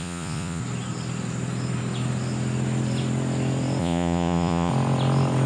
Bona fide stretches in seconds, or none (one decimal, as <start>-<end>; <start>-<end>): 0.6-3.8; 4.7-5.5